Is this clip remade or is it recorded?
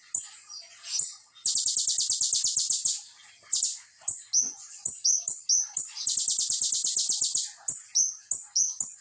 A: recorded